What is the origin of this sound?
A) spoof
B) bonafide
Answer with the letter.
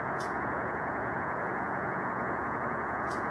A